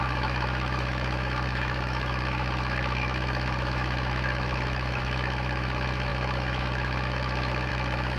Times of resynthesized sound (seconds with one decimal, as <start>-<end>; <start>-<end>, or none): 0.0-8.2